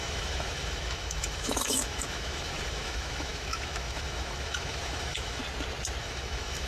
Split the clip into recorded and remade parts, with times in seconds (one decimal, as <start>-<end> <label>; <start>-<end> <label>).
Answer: 0.0-5.4 remade; 5.4-6.0 recorded; 6.0-6.7 remade